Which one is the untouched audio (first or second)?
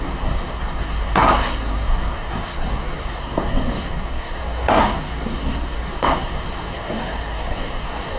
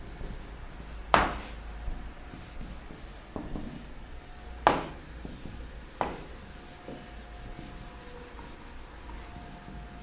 second